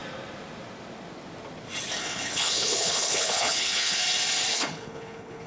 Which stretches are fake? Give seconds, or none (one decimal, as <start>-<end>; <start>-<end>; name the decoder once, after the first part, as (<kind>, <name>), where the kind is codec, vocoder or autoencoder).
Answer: 2.0-4.0 (codec, HILCodec); 4.5-5.5

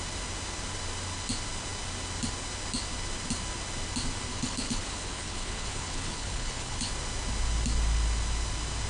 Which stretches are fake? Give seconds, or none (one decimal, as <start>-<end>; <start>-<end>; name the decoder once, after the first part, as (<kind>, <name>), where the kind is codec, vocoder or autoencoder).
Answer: 4.3-6.9 (codec, HILCodec)

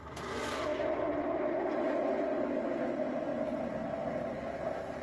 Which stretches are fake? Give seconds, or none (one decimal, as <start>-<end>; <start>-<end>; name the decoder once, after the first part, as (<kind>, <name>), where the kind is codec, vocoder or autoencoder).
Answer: none

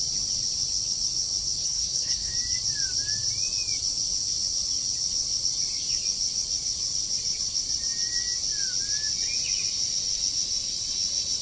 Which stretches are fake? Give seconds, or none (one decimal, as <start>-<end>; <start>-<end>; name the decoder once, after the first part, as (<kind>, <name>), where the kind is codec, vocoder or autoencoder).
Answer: 1.6-2.3 (codec, HILCodec)

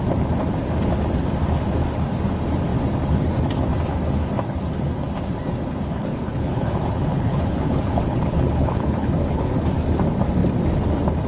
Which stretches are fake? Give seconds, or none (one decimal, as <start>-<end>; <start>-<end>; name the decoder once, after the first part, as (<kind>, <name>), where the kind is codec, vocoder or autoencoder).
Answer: 5.9-9.6 (codec, HILCodec)

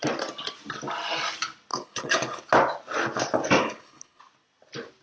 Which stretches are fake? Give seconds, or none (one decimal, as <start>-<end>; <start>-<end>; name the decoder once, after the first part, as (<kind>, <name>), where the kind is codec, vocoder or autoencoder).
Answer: 1.7-2.4 (codec, HILCodec); 3.6-4.2

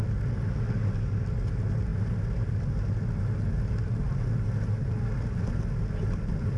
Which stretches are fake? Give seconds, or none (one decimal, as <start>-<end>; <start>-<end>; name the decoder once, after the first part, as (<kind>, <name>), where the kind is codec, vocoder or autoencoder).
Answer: none

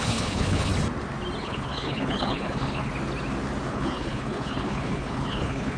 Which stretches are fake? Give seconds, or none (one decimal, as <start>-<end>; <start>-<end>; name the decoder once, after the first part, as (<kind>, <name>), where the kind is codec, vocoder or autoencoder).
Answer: 0.0-0.7 (codec, HILCodec); 1.4-2.9; 3.7-5.8